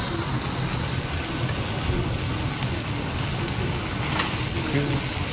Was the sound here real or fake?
real